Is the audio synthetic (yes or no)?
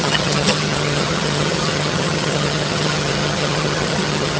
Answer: yes